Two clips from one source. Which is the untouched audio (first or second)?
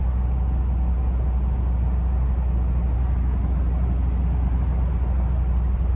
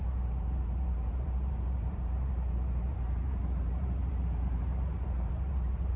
first